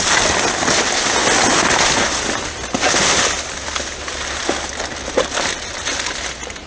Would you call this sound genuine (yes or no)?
yes